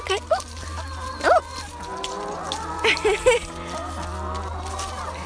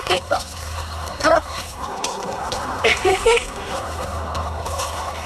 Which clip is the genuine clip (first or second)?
first